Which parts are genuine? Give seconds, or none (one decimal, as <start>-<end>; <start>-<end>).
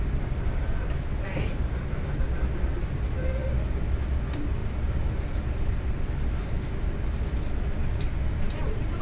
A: 0.0-9.0